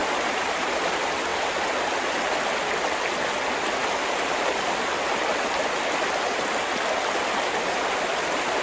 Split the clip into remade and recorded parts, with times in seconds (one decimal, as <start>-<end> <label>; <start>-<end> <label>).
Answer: 0.0-0.7 remade; 0.7-8.6 recorded